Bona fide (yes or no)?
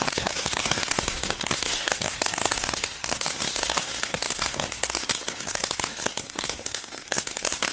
no